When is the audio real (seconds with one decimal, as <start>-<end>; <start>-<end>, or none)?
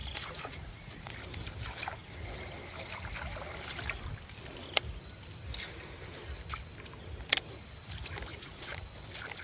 1.1-8.3; 8.9-9.4